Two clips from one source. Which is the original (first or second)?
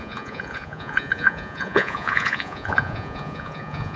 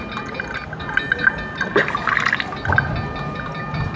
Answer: second